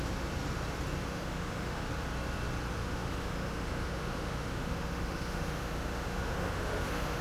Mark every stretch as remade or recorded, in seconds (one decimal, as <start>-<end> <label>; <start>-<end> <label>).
0.0-1.0 recorded; 1.0-1.9 remade; 1.9-2.8 recorded; 2.8-7.2 remade